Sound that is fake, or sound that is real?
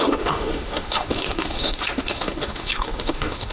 fake